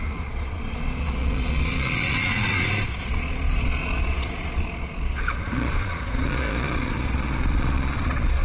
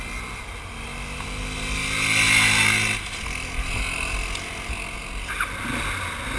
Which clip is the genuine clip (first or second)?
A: second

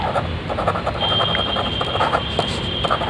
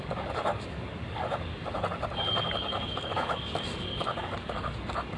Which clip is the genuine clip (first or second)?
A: first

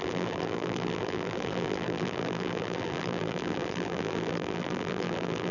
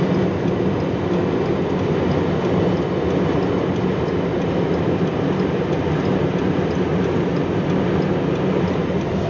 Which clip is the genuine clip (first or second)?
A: second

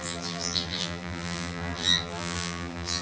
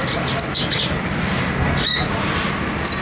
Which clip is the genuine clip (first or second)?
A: second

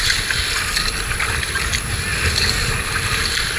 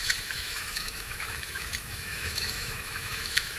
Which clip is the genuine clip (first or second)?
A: first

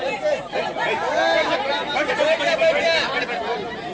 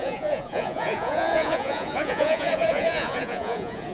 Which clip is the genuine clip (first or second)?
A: first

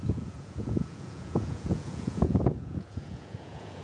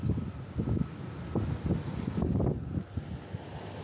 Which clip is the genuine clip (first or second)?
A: second